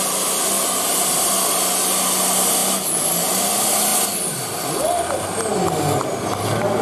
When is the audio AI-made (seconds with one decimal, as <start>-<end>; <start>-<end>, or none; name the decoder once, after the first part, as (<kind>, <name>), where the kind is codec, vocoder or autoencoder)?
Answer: none